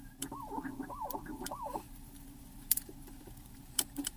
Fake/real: fake